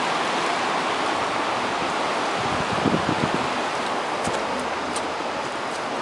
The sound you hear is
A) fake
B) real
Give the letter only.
B